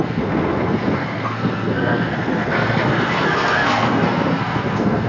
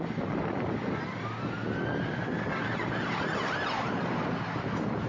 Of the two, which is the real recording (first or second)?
second